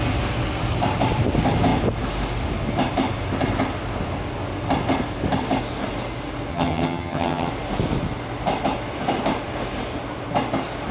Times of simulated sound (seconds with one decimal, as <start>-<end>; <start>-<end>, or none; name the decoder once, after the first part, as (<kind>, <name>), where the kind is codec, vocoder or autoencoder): 6.5-7.5 (vocoder, HiFi-GAN)